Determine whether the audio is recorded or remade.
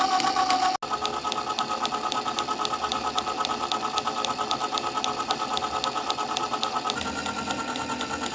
recorded